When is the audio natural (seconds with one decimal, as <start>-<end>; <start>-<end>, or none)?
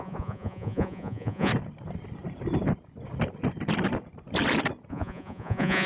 1.5-4.9